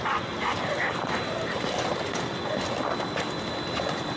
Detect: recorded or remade recorded